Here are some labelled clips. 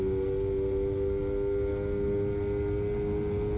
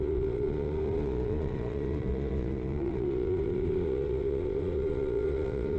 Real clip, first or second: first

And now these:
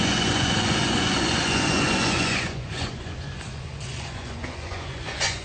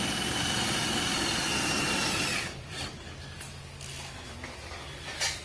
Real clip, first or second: second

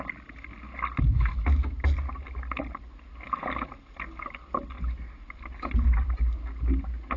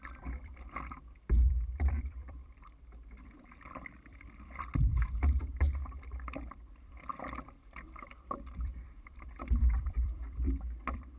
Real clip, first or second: first